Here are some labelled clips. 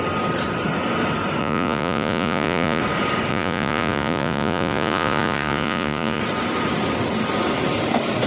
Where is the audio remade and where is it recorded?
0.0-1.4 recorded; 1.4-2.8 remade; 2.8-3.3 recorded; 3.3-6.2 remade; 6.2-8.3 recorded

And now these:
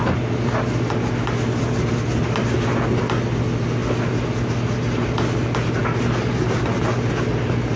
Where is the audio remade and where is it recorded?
0.0-7.8 recorded

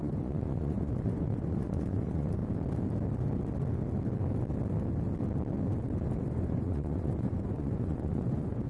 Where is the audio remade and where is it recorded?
0.0-2.4 remade; 2.4-6.2 recorded; 6.2-8.7 remade

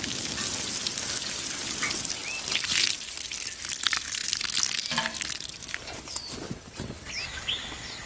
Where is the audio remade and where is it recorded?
0.0-8.1 recorded

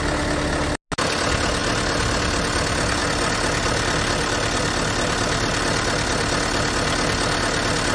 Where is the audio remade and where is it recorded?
0.0-7.9 recorded

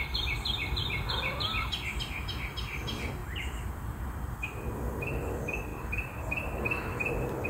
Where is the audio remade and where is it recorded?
0.0-3.2 recorded; 3.2-4.0 remade; 4.0-7.5 recorded